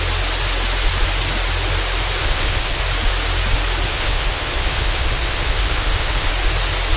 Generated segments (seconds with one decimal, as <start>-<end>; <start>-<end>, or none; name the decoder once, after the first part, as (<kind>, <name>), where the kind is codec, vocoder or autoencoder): 2.2-2.8 (codec, HILCodec); 3.9-6.3